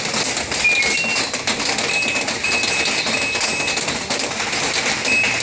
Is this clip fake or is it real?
real